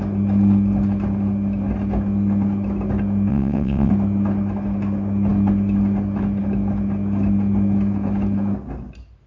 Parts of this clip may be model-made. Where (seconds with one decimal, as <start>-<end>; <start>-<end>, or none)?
3.3-3.9